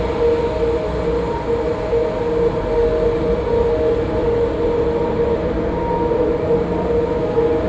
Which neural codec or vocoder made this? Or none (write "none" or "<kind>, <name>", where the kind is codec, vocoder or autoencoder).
none